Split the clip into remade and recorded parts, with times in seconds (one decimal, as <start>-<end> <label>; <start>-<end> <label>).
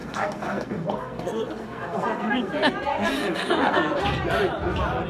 0.0-2.5 remade; 2.5-2.9 recorded; 2.9-4.0 remade; 4.0-5.1 recorded